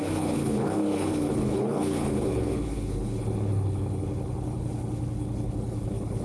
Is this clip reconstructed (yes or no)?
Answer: yes